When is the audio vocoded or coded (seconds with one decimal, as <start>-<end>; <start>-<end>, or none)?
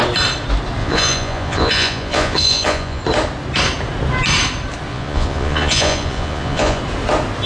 0.8-3.0; 4.9-6.8